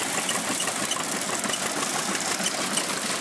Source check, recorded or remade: recorded